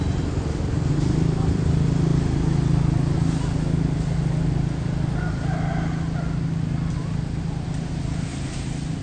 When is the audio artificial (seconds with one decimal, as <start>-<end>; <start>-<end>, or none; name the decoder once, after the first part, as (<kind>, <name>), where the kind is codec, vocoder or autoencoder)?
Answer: none